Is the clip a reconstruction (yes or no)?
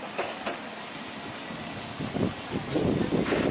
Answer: no